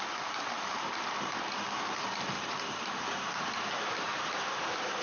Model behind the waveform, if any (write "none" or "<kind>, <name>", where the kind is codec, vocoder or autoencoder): vocoder, BigVGAN v2